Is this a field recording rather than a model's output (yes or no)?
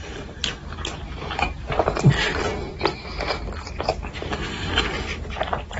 yes